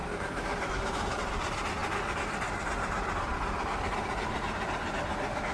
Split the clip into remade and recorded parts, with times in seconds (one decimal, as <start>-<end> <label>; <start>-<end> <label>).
0.0-1.2 remade; 1.2-5.5 recorded